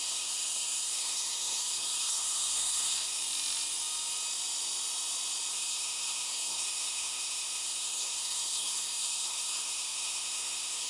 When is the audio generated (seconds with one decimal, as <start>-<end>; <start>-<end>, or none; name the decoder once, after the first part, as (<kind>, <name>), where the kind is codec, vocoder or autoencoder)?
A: 0.0-3.2 (codec, SNAC); 5.5-10.9